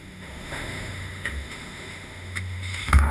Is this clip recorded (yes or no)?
no